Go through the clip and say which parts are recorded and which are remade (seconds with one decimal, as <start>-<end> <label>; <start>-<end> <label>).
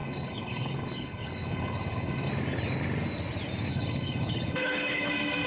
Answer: 0.0-2.3 remade; 2.3-3.7 recorded; 3.7-5.1 remade; 5.1-5.5 recorded